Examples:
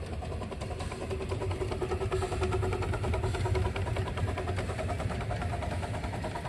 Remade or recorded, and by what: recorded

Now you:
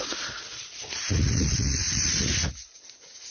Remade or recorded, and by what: remade, vocoder, Vocos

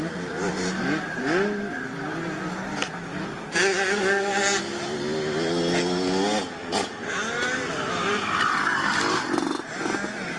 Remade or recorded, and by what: recorded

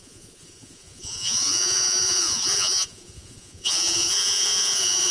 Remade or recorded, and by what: remade, vocoder, Vocos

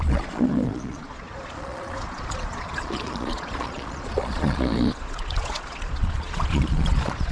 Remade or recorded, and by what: remade, vocoder, Vocos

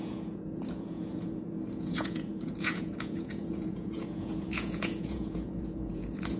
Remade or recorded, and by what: remade, vocoder, Vocos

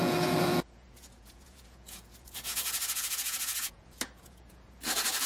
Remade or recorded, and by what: remade, vocoder, Vocos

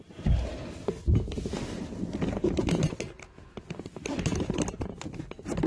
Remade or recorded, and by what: recorded